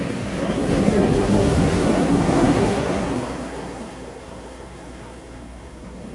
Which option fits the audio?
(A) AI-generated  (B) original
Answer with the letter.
A